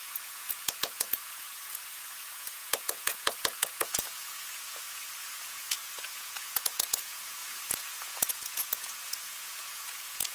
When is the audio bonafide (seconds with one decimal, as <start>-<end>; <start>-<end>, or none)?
none